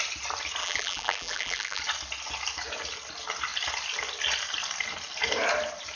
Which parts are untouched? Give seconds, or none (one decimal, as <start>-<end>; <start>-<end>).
0.0-0.6; 1.8-6.0